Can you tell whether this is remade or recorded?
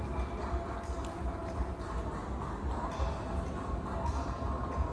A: recorded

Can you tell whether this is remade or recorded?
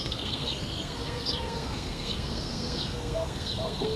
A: remade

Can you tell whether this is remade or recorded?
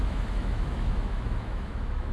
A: remade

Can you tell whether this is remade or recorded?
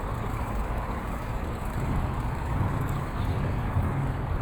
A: remade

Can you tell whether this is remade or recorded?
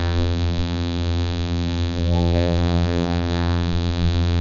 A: remade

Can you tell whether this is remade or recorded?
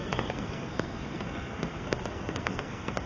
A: remade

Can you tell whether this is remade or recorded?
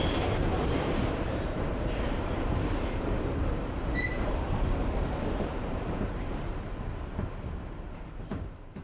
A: remade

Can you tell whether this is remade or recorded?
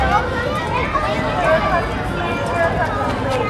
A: recorded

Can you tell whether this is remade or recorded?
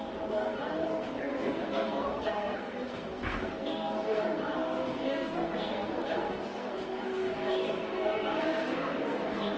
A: remade